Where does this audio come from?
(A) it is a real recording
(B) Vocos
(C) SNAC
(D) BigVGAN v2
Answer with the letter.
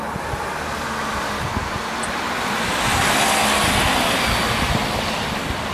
A